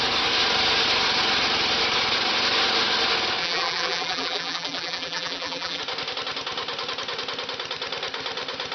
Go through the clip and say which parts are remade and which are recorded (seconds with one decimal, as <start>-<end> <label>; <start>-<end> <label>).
0.0-3.4 recorded; 3.4-5.8 remade; 5.8-8.7 recorded